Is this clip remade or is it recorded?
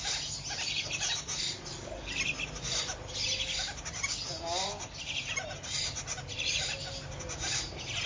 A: recorded